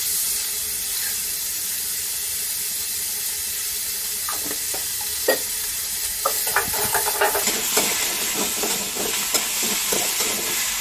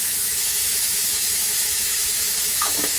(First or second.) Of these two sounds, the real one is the first